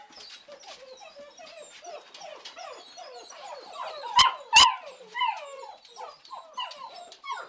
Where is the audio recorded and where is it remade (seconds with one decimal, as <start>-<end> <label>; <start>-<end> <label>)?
0.0-2.3 recorded; 2.3-5.6 remade; 5.6-7.5 recorded

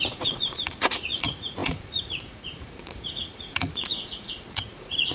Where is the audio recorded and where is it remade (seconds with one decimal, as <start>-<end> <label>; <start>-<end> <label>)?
0.0-5.1 remade

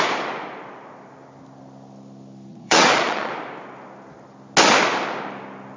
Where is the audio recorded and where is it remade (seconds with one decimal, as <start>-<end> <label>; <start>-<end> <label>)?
0.0-2.5 recorded; 2.5-3.3 remade; 3.3-5.8 recorded

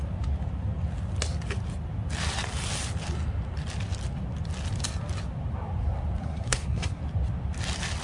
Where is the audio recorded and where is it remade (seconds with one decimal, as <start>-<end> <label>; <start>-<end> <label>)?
0.0-6.2 recorded; 6.2-7.0 remade; 7.0-8.0 recorded

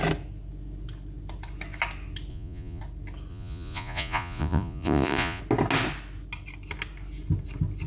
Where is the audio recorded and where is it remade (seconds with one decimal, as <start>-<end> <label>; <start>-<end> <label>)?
0.0-2.3 recorded; 2.3-2.8 remade; 2.8-3.3 recorded; 3.3-5.4 remade; 5.4-7.9 recorded

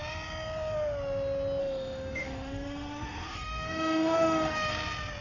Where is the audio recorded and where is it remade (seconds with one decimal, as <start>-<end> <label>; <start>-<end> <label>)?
0.0-1.6 recorded; 1.6-4.7 remade; 4.7-5.2 recorded